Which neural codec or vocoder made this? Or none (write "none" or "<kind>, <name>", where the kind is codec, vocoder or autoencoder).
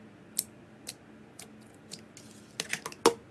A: none